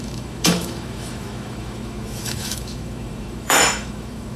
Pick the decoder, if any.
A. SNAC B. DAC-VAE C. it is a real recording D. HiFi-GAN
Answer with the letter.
B